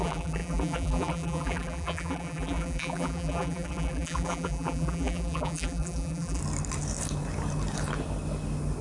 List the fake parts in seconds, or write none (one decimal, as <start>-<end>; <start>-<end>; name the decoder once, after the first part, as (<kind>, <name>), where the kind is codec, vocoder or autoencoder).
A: 0.0-6.4 (vocoder, BigVGAN v2)